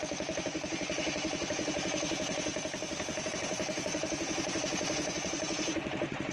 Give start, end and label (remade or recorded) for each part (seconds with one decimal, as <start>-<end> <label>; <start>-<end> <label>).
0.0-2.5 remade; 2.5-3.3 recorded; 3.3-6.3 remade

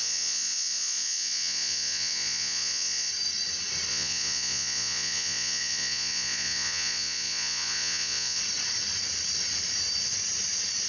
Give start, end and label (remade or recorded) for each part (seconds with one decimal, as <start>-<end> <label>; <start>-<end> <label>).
0.0-3.1 remade; 3.1-3.9 recorded; 3.9-8.4 remade; 8.4-10.9 recorded

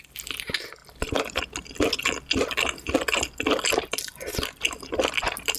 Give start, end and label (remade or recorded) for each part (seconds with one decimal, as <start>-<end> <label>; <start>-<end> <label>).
0.0-5.6 recorded

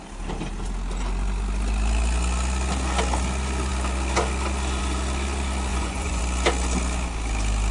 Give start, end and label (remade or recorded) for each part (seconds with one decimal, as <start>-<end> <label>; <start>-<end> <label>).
0.0-5.7 recorded; 5.7-6.2 remade; 6.2-7.7 recorded

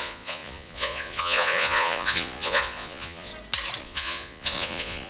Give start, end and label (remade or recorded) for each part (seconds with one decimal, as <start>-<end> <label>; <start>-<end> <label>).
0.0-3.3 remade; 3.3-3.8 recorded; 3.8-5.1 remade

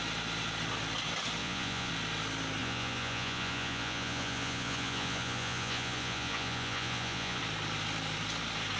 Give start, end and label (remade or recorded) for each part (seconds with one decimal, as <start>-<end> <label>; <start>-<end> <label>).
0.0-1.4 recorded; 1.4-1.9 remade; 1.9-2.6 recorded; 2.6-7.4 remade; 7.4-8.8 recorded

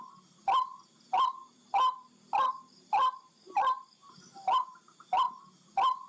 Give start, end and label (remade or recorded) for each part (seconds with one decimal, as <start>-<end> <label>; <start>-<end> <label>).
0.0-6.1 recorded

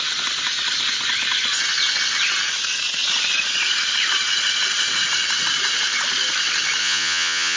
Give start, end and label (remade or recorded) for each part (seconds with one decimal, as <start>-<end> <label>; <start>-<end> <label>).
0.0-6.8 recorded; 6.8-7.6 remade